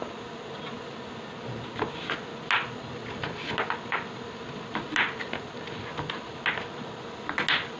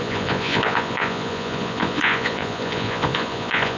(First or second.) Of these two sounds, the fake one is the second